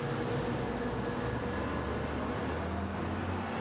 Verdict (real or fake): real